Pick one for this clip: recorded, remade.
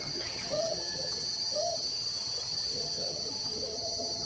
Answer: remade